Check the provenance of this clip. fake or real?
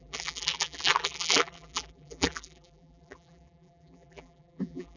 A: fake